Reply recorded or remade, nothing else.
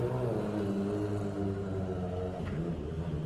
recorded